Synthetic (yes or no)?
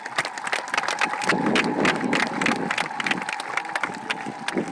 no